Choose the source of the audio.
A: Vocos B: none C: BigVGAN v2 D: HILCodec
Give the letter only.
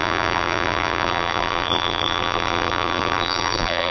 C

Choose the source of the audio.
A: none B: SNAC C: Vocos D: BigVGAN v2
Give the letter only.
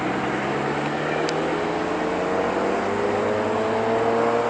A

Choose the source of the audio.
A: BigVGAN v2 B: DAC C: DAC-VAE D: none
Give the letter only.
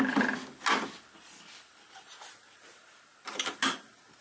D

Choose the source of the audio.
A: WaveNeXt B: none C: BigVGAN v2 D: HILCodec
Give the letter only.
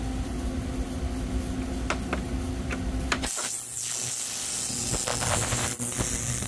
B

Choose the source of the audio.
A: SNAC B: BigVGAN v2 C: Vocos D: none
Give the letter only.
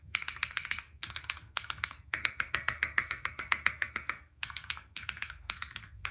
A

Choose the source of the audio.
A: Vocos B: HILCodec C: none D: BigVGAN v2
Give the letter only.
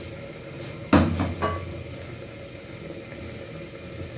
C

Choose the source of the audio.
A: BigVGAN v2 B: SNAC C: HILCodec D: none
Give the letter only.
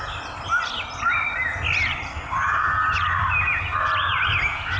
D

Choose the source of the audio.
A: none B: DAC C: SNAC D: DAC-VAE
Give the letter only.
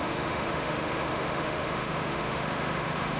D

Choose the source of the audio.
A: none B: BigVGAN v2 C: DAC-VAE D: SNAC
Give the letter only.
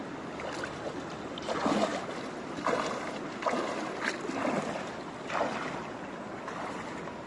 A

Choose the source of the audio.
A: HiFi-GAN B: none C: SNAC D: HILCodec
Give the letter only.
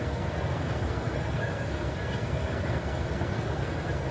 C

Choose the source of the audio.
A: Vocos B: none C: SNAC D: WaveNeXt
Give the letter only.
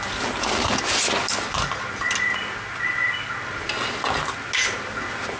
B